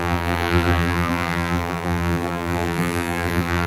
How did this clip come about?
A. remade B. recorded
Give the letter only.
A